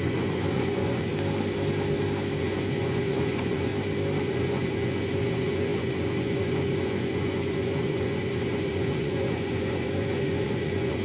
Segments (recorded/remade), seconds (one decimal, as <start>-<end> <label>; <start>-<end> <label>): 0.0-1.1 remade; 1.1-2.4 recorded; 2.4-3.7 remade; 3.7-4.2 recorded; 4.2-11.0 remade